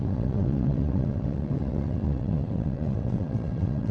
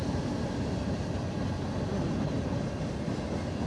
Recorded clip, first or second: second